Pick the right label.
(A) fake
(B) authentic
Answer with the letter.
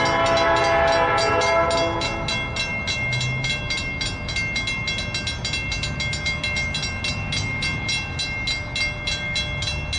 B